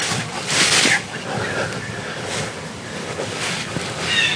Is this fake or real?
fake